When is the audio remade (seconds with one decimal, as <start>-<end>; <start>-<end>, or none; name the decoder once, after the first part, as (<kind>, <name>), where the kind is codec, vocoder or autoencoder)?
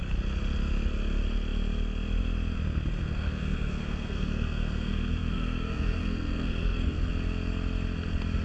3.0-7.1 (codec, SNAC)